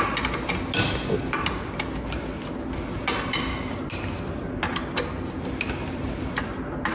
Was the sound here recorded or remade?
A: recorded